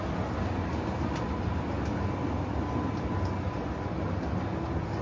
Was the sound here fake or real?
real